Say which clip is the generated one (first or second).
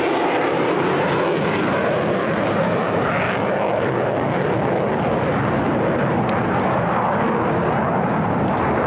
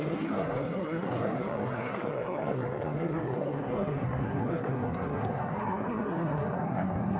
second